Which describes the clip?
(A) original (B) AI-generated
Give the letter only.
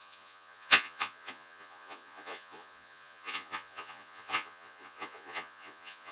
B